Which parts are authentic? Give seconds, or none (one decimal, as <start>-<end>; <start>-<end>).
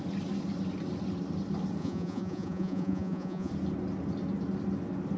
0.0-1.8; 3.5-5.2